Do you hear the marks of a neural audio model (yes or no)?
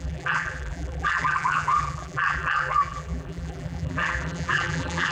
yes